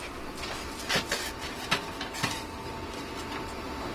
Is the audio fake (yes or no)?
no